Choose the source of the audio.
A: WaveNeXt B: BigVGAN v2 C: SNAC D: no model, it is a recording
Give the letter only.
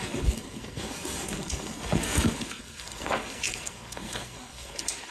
C